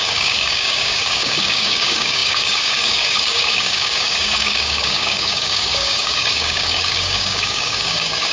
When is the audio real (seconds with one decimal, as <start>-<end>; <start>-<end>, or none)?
none